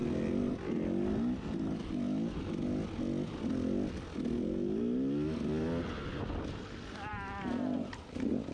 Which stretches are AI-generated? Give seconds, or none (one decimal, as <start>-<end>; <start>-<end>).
7.1-8.0